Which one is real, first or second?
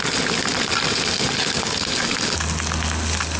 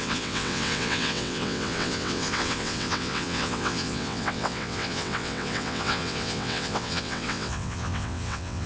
first